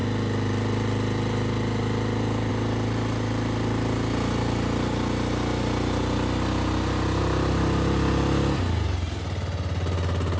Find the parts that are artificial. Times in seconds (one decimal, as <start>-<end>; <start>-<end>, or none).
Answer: none